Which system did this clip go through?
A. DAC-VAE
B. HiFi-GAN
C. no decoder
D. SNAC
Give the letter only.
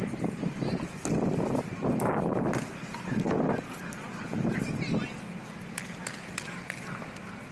C